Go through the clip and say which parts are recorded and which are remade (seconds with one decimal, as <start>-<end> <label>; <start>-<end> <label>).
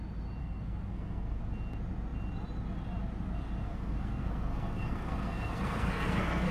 0.0-0.4 recorded; 0.4-1.4 remade; 1.4-3.6 recorded; 3.6-6.5 remade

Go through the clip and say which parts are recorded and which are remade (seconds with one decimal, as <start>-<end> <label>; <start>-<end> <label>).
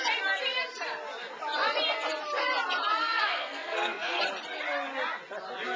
0.0-3.0 recorded; 3.0-4.2 remade; 4.2-5.8 recorded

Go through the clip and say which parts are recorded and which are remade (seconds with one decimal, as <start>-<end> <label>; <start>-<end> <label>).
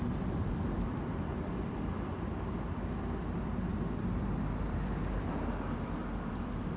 0.0-3.7 remade; 3.7-6.3 recorded; 6.3-6.8 remade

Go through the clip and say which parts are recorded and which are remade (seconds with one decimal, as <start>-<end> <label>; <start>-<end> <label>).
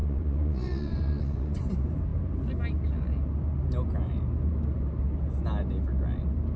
0.0-1.6 remade; 1.6-6.6 recorded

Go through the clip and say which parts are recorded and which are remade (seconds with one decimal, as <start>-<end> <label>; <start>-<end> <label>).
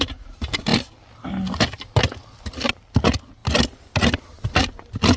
0.0-5.2 recorded